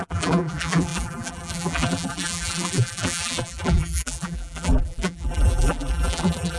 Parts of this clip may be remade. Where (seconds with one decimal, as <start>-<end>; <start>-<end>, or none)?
0.0-6.6